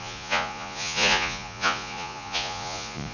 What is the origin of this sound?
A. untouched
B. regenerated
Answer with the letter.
B